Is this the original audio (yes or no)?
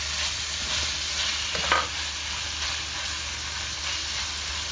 yes